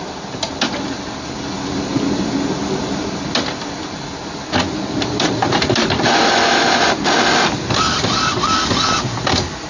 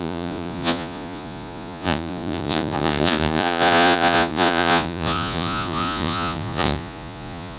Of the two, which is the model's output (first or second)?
second